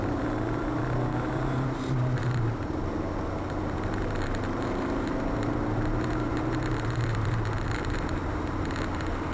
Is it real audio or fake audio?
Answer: fake